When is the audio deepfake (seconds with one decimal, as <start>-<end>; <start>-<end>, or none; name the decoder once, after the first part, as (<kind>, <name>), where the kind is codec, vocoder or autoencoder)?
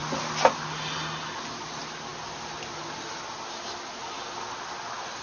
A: 0.0-0.6 (vocoder, BigVGAN v2)